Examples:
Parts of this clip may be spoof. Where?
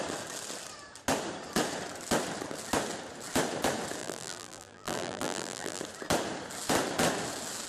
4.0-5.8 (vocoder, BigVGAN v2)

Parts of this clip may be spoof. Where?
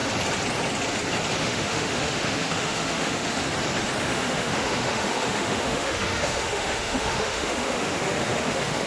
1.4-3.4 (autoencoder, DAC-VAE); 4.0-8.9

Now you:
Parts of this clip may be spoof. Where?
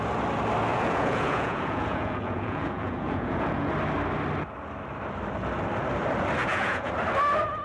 0.7-3.7 (vocoder, Vocos); 6.4-6.9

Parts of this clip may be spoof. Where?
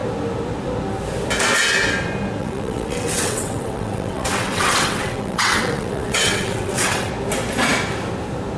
2.4-7.1 (vocoder, WaveNeXt)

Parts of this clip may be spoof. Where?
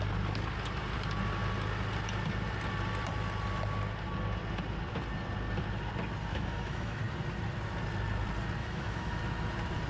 6.3-7.0 (autoencoder, DAC-VAE); 8.6-9.2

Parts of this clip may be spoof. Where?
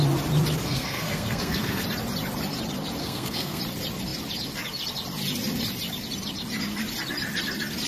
0.6-1.8 (codec, SNAC); 3.0-3.6